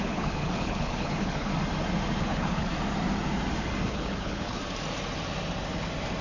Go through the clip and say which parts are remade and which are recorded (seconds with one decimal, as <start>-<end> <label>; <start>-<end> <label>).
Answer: 0.0-1.5 remade; 1.5-2.2 recorded; 2.2-2.7 remade; 2.7-3.9 recorded; 3.9-4.6 remade; 4.6-6.2 recorded